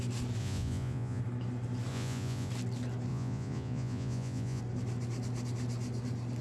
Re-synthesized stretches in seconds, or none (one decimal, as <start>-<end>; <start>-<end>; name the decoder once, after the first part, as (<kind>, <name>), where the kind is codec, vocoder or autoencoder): 0.4-1.2 (vocoder, Vocos); 1.9-2.5; 3.1-4.6

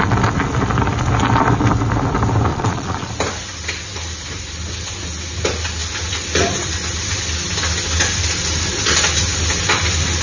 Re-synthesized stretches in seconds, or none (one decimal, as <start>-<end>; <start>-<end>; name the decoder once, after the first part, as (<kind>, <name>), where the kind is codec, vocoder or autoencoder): 2.5-3.1 (vocoder, Vocos)

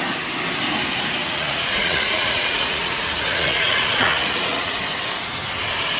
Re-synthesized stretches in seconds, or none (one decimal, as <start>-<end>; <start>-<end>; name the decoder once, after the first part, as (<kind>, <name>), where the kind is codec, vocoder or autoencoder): 1.2-4.8 (vocoder, Vocos)

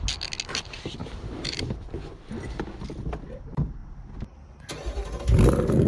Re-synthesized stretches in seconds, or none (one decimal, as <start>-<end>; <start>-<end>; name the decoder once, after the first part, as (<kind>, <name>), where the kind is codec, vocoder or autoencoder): none

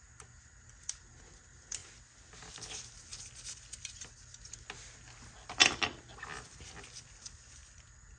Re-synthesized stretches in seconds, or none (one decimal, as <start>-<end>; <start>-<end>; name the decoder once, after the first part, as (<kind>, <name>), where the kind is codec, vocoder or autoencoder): none